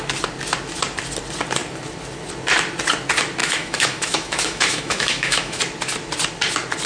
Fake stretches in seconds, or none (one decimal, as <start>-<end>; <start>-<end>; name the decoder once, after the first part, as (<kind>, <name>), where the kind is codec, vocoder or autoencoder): 3.4-5.6 (autoencoder, DAC-VAE)